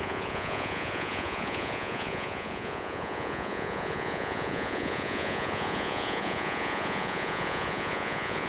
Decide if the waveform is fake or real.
fake